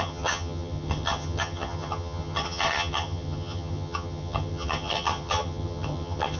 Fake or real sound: fake